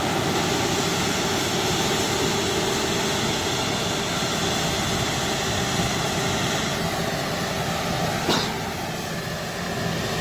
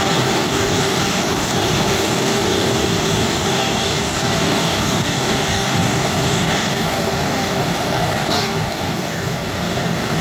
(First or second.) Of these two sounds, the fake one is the second